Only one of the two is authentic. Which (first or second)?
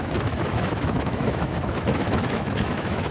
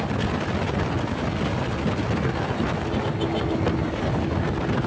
second